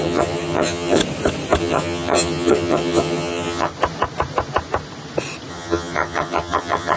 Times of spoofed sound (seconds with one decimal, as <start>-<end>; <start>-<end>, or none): 0.0-1.0; 1.6-3.7; 5.5-7.0